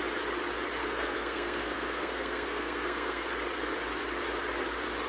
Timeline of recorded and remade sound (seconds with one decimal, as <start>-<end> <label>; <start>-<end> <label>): 0.0-0.8 recorded; 0.8-3.3 remade; 3.3-5.1 recorded